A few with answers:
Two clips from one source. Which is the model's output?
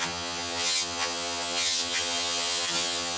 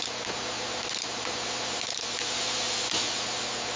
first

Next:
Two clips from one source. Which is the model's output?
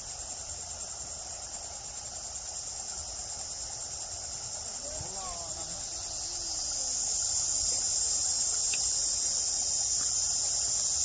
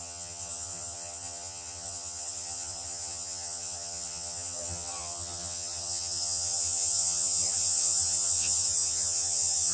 second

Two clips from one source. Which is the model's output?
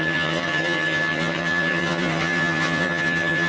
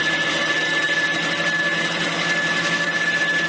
first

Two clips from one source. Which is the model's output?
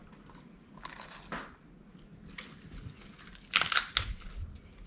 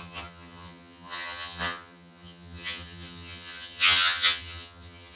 second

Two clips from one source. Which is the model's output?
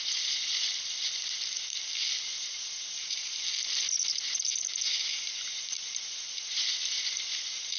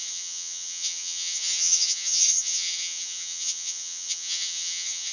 second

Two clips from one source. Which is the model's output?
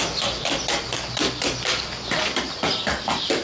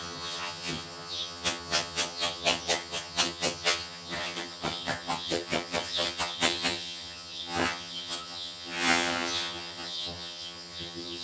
second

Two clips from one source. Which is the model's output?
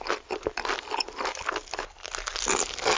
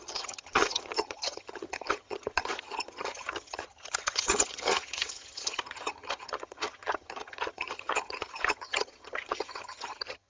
second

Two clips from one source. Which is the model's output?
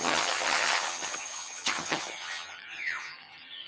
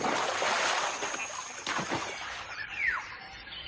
first